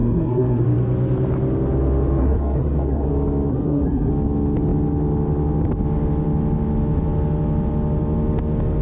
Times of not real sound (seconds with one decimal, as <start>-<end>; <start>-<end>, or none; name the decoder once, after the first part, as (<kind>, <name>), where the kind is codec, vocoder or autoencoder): 0.0-0.6 (codec, SNAC); 2.2-3.1; 3.5-4.1